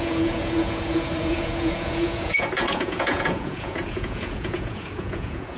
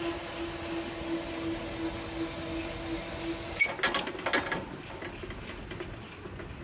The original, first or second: second